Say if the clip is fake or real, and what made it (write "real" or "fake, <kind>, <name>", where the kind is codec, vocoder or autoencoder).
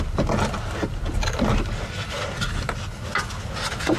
real